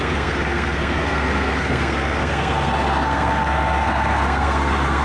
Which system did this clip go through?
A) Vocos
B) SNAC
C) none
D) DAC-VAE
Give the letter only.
B